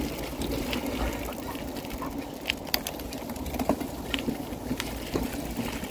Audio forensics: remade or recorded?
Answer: recorded